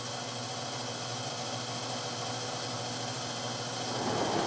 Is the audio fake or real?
real